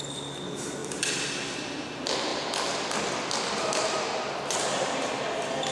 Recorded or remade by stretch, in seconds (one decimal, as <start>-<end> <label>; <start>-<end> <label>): 0.0-5.7 recorded